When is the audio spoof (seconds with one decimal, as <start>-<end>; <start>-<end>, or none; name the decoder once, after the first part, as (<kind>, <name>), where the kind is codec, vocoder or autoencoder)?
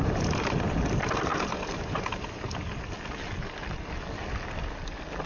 none